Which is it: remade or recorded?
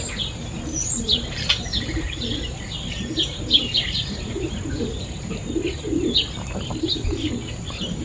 recorded